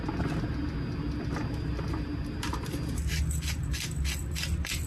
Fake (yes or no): no